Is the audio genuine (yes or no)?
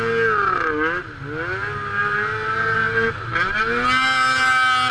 yes